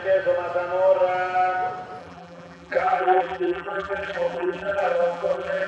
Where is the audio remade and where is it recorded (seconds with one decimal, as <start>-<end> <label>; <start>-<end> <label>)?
0.0-2.0 recorded; 2.0-5.7 remade

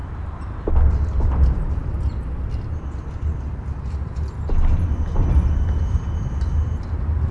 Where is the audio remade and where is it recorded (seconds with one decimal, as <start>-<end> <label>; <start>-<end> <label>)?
0.0-0.7 remade; 0.7-7.3 recorded

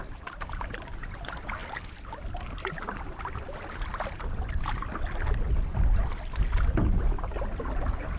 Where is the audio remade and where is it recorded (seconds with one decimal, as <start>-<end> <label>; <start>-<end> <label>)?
0.0-8.2 recorded

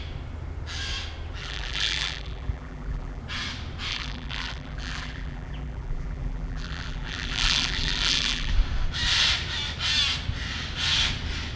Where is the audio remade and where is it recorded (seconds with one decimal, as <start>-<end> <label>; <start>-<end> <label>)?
0.0-1.4 recorded; 1.4-3.2 remade; 3.2-3.9 recorded; 3.9-8.5 remade; 8.5-11.6 recorded